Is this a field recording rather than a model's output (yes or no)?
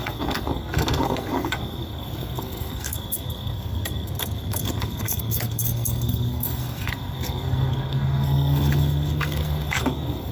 no